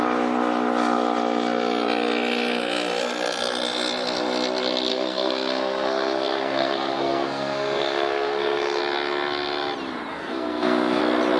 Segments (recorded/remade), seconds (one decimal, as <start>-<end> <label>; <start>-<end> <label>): 0.0-4.9 recorded; 4.9-8.8 remade; 8.8-10.1 recorded; 10.1-11.0 remade; 11.0-11.4 recorded